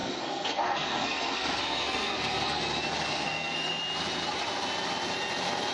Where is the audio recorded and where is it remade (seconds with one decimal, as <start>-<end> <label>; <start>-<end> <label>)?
0.0-2.6 remade; 2.6-3.1 recorded; 3.1-3.8 remade; 3.8-5.7 recorded